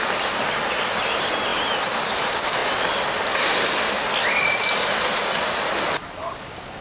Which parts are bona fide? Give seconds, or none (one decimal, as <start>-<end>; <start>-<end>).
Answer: 0.0-6.8